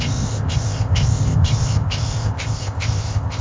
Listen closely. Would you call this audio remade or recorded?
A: remade